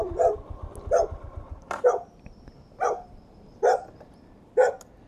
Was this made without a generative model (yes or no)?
yes